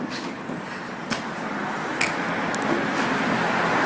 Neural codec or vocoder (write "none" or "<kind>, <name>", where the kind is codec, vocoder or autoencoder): none